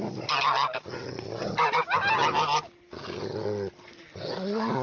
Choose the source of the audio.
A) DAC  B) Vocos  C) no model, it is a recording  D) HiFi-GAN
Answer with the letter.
C